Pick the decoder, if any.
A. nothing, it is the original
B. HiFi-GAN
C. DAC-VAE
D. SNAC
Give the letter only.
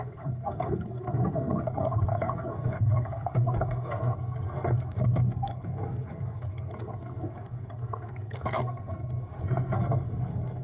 D